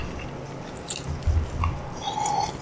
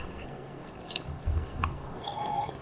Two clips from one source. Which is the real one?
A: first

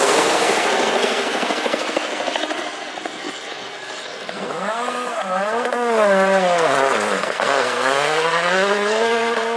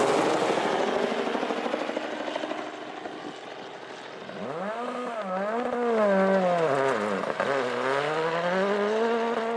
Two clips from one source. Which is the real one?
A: second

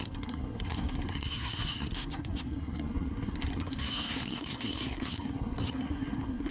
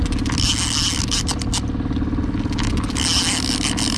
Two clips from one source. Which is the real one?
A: second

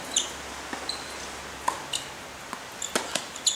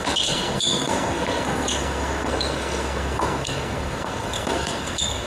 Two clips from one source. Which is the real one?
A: first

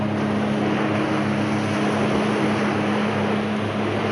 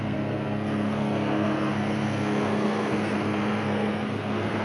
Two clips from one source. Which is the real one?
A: first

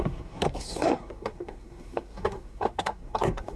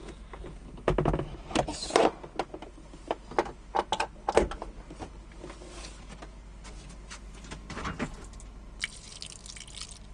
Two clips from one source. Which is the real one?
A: second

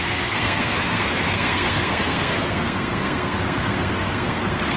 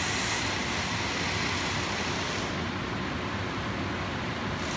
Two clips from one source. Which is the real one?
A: second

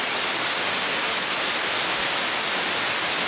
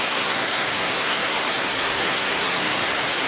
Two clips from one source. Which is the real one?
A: first